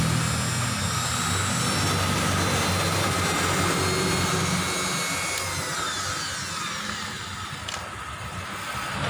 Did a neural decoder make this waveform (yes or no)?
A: no